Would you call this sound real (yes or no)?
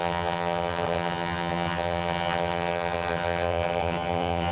no